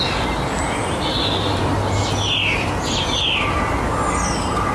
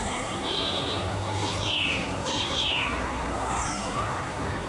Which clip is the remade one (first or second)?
second